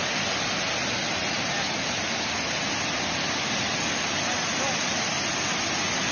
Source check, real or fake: real